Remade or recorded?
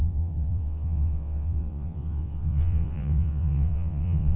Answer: remade